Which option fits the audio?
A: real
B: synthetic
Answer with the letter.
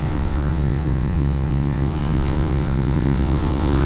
B